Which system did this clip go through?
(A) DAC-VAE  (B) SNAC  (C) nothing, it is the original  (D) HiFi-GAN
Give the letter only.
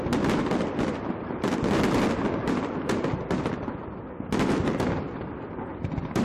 C